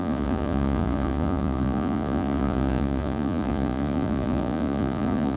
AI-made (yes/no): yes